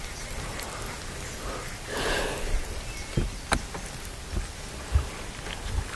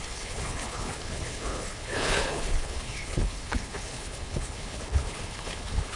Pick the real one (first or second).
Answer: first